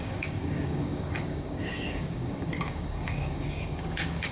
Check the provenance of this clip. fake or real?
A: fake